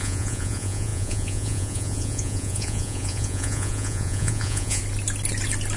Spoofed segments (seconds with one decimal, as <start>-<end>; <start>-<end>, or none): 0.0-4.8